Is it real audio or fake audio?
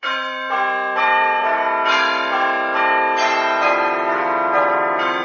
fake